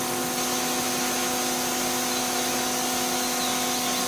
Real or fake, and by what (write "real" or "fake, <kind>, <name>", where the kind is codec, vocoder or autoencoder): real